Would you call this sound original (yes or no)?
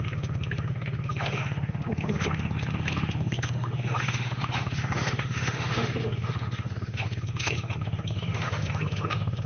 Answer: no